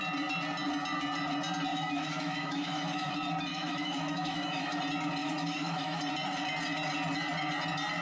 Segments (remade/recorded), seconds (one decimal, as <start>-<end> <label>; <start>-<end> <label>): 0.0-1.7 recorded; 1.7-3.1 remade; 3.1-3.5 recorded; 3.5-4.8 remade; 4.8-5.2 recorded; 5.2-6.0 remade; 6.0-8.0 recorded